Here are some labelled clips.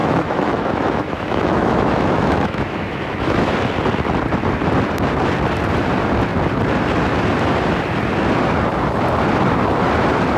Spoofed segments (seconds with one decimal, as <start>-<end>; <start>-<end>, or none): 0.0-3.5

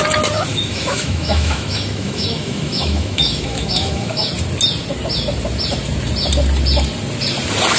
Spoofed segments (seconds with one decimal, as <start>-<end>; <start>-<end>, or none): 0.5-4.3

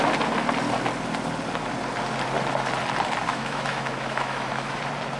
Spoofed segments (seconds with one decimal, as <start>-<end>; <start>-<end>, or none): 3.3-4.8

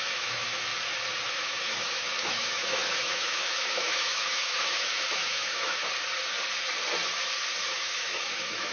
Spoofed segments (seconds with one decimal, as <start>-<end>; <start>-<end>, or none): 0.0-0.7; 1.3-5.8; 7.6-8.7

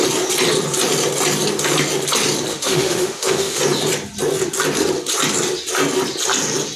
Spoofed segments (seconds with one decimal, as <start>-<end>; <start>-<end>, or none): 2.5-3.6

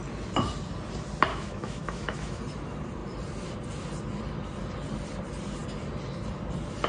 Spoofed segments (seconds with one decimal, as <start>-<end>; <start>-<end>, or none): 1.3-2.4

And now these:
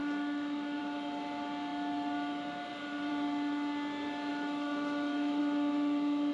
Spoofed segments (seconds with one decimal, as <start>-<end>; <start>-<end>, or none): 0.0-0.8; 4.3-5.4

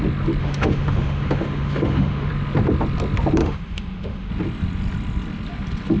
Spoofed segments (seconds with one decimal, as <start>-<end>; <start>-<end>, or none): 0.4-2.3; 3.4-4.3